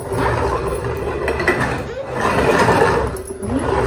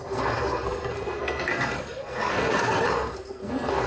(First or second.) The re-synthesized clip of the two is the second